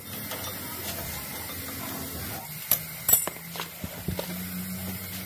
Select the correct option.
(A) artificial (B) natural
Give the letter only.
A